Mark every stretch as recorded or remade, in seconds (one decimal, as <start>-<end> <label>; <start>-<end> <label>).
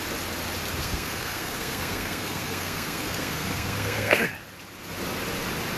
0.0-0.8 recorded; 0.8-4.3 remade; 4.3-5.8 recorded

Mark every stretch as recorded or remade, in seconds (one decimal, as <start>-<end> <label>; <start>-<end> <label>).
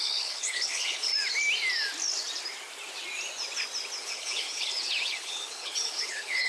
0.0-1.1 remade; 1.1-4.0 recorded; 4.0-6.5 remade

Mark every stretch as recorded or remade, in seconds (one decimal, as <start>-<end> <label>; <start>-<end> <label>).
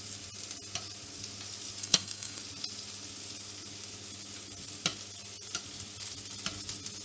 0.0-1.8 recorded; 1.8-2.4 remade; 2.4-7.0 recorded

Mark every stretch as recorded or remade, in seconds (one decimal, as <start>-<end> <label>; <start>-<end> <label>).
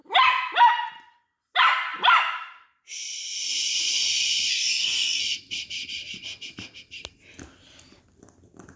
0.0-4.5 recorded; 4.5-5.2 remade; 5.2-8.8 recorded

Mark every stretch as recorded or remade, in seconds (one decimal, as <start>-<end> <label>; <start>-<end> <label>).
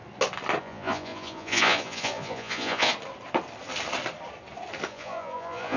0.0-0.6 recorded; 0.6-2.9 remade; 2.9-4.9 recorded; 4.9-5.8 remade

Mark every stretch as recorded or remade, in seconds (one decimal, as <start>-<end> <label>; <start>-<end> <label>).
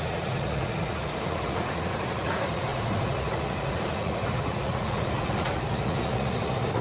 0.0-6.8 remade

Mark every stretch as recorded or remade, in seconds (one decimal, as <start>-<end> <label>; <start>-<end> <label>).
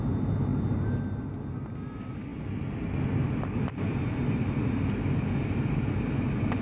0.0-6.6 recorded